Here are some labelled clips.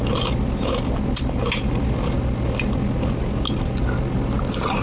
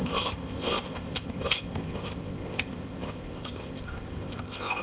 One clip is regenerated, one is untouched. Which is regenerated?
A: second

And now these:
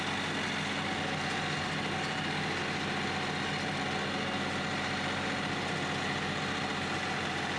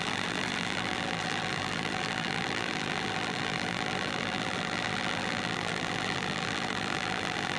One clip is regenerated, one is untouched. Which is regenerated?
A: second